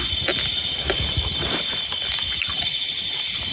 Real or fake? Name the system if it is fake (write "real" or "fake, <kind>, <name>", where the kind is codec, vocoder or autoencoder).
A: real